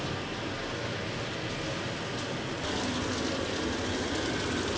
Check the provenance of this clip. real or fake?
real